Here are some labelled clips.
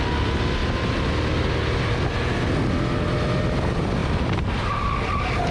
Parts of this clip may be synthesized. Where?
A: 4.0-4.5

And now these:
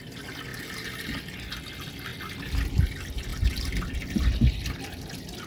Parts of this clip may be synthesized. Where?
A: 0.5-1.2; 2.1-2.8; 3.3-5.5

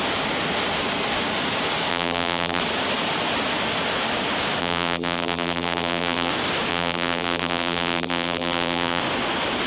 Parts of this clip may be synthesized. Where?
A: 1.9-2.6; 4.6-6.3; 6.7-9.0

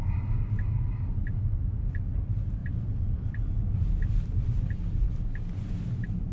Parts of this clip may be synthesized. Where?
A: 2.6-5.1

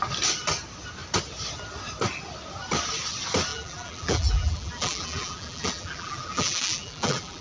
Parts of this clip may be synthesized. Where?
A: 3.5-7.4

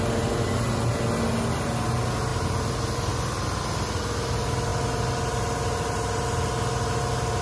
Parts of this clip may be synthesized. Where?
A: 2.3-3.1

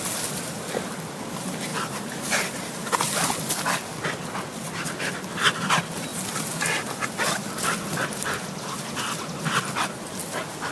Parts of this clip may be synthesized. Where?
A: 1.7-3.5

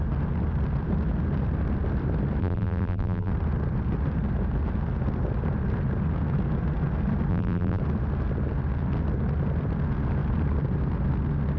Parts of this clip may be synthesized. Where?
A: 2.4-3.3; 7.3-7.8